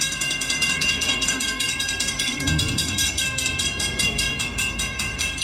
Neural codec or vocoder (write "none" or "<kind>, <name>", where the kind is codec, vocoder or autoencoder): codec, SNAC